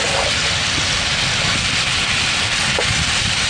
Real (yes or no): yes